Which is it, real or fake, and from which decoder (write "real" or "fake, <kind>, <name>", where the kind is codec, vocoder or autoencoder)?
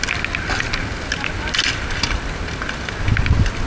real